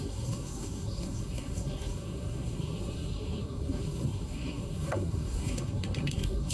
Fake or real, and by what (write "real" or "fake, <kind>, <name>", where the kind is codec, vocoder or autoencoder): fake, codec, SNAC